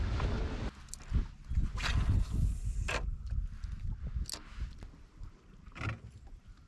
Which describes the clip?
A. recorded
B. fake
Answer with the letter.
A